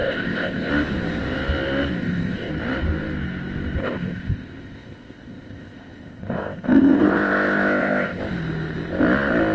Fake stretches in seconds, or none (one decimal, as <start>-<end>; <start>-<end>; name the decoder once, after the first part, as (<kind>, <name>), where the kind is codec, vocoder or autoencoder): 0.0-0.7 (codec, ZipCodec); 2.0-2.5; 3.8-8.2